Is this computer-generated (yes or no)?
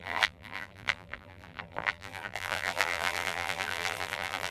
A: yes